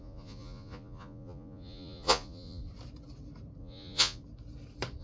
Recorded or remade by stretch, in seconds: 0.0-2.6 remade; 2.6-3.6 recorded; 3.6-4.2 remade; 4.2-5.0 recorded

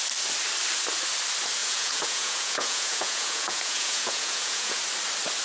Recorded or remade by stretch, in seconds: 0.0-1.6 recorded; 1.6-4.8 remade; 4.8-5.4 recorded

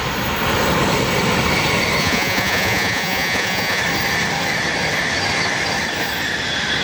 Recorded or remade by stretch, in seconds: 0.0-2.0 recorded; 2.0-3.8 remade; 3.8-6.8 recorded

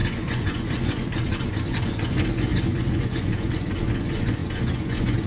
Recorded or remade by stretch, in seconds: 0.0-5.3 remade

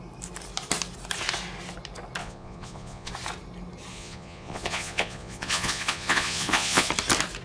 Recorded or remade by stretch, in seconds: 0.0-2.2 recorded; 2.2-3.1 remade; 3.1-3.9 recorded; 3.9-6.9 remade; 6.9-7.4 recorded